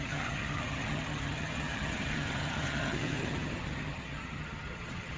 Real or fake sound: fake